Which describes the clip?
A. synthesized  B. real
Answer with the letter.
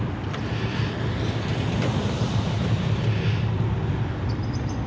B